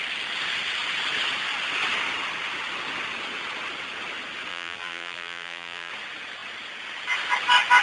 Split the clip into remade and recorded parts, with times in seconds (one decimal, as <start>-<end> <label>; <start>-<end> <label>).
0.0-4.5 recorded; 4.5-5.9 remade; 5.9-7.8 recorded